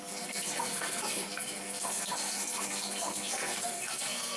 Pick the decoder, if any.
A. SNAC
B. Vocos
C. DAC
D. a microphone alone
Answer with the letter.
A